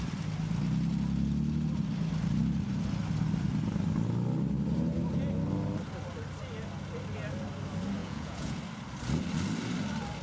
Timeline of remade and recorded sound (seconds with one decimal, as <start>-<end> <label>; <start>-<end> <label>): 0.0-8.0 recorded; 8.0-8.6 remade; 8.6-10.2 recorded